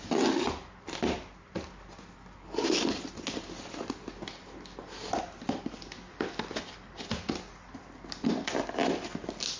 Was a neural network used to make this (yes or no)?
no